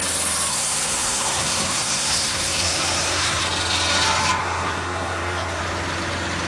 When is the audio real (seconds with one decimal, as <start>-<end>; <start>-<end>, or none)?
0.0-0.5; 3.4-4.4; 5.6-6.5